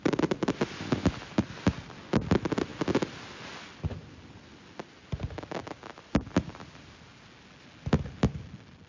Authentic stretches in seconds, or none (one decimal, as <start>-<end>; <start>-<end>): 0.0-8.9